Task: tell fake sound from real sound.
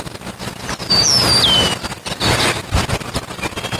real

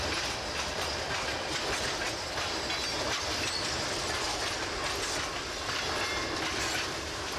real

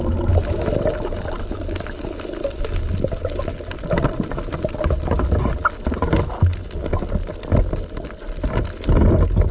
real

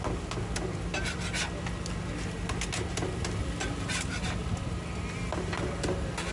real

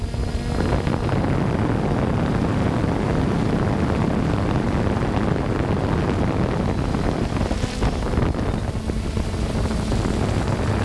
real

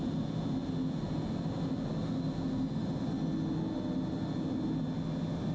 real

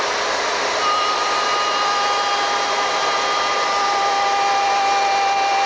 real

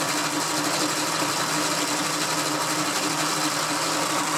real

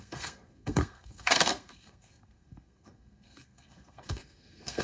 fake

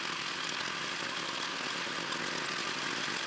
real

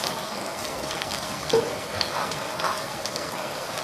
fake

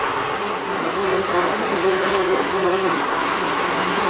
fake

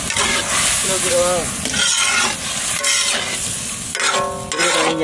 real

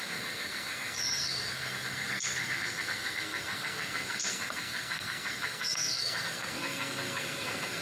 fake